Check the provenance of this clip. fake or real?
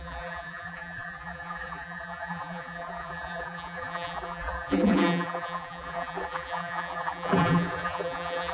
fake